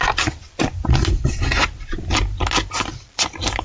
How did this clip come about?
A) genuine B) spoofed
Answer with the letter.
A